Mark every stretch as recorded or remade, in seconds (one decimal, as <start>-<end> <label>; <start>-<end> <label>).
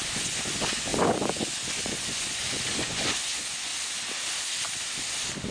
0.0-3.7 remade; 3.7-5.5 recorded